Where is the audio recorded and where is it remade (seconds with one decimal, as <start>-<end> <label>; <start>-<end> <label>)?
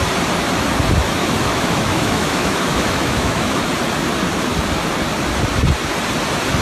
0.0-1.2 recorded; 1.2-3.7 remade; 3.7-6.6 recorded